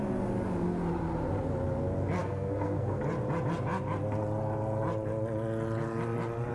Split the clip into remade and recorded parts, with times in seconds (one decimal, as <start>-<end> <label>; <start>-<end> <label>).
0.0-2.2 recorded; 2.2-3.0 remade; 3.0-6.5 recorded